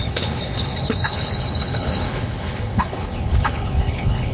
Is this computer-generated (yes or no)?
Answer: yes